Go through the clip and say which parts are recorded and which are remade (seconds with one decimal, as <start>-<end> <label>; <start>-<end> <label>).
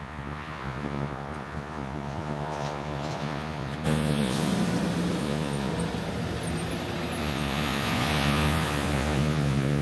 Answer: 0.0-4.5 remade; 4.5-5.2 recorded; 5.2-5.7 remade; 5.7-7.2 recorded; 7.2-9.8 remade